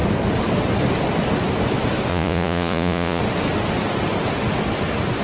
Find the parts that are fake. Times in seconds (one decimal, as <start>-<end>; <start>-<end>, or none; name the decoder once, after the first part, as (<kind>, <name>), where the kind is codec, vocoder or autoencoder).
2.1-3.2 (vocoder, Vocos)